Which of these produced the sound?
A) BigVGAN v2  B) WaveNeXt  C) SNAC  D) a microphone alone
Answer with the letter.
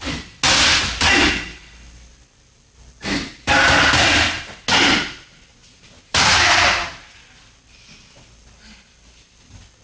D